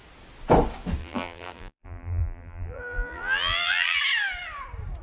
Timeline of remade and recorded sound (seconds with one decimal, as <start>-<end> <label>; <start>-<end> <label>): 0.0-1.0 recorded; 1.0-4.0 remade; 4.0-5.0 recorded